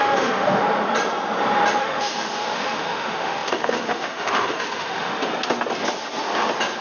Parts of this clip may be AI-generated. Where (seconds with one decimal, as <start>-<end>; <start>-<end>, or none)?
0.0-0.6; 1.8-5.1